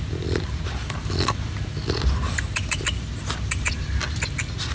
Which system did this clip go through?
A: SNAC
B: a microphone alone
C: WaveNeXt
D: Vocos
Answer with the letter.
B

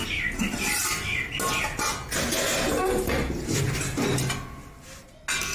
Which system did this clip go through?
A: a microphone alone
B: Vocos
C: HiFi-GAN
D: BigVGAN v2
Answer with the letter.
A